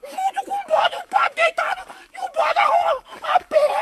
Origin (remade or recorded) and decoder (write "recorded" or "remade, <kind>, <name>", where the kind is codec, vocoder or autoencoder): remade, codec, DAC